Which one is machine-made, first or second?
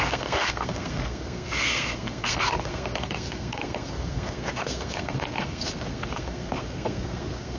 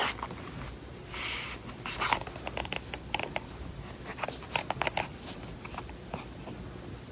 first